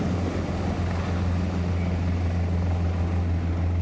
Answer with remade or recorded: recorded